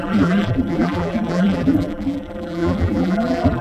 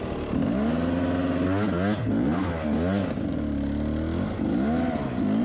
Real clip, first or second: second